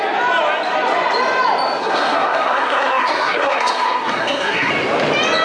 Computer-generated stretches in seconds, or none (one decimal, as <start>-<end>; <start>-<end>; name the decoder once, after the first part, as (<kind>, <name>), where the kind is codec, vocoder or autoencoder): 1.8-4.7 (codec, SNAC)